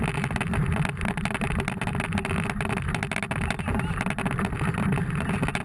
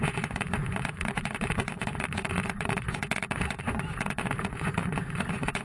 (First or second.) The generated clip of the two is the second